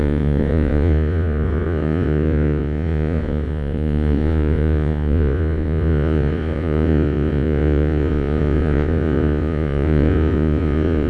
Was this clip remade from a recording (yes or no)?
yes